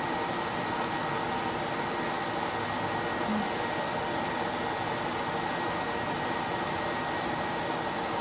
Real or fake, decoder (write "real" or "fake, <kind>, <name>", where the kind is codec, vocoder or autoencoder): real